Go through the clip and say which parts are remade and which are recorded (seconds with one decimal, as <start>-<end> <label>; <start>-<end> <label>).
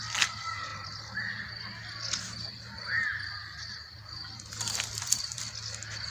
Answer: 0.0-3.1 recorded; 3.1-5.4 remade; 5.4-6.1 recorded